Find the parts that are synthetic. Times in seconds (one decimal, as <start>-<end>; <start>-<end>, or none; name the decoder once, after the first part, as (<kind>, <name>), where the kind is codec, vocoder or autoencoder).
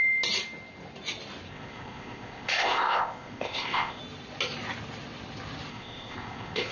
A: 1.5-4.0 (codec, ZipCodec); 5.7-6.7